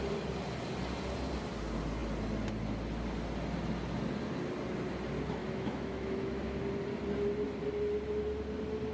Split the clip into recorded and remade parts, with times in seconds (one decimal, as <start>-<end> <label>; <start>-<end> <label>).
0.0-5.4 recorded; 5.4-6.6 remade; 6.6-8.9 recorded